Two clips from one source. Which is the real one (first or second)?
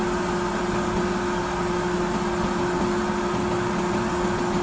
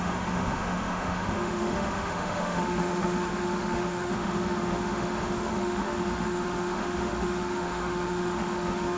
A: first